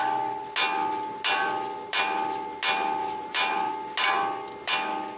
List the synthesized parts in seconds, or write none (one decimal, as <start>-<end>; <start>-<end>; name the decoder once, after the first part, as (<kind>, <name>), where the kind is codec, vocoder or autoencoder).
3.0-3.7 (vocoder, BigVGAN v2)